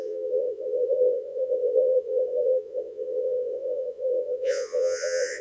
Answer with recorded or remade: remade